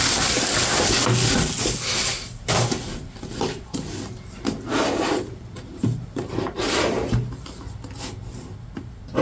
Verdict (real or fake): real